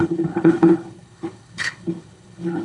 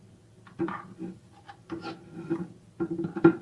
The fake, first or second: first